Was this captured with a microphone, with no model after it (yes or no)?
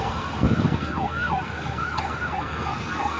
no